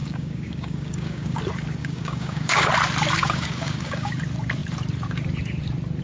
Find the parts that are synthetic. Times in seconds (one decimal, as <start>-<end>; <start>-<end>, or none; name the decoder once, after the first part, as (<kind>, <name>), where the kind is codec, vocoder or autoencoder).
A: 0.0-1.4 (codec, DAC); 1.8-2.7; 3.2-4.1